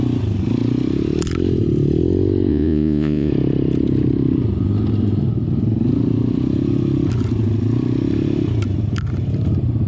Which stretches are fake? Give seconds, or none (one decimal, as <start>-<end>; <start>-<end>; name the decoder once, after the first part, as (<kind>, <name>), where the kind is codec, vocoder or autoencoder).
2.5-3.3 (vocoder, Vocos)